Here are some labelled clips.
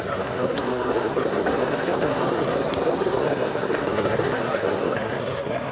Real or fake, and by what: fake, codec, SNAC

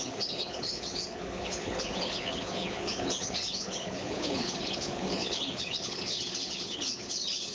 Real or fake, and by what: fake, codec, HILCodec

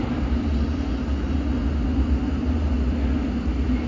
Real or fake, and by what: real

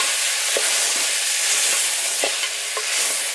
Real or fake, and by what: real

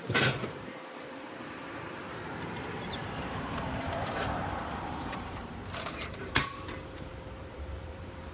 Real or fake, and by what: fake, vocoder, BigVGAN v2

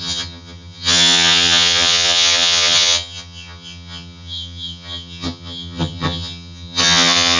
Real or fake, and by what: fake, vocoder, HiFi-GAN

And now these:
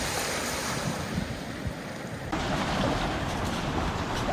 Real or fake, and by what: real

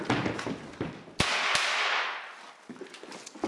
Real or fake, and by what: real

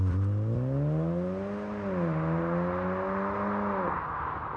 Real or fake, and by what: real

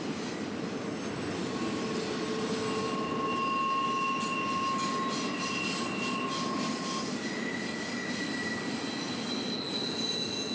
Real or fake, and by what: real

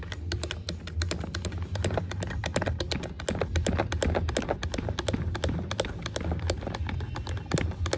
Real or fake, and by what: real